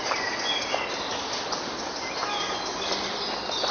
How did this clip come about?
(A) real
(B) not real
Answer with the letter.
A